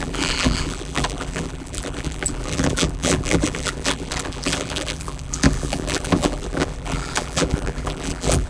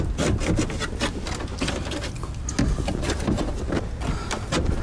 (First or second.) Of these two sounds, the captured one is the second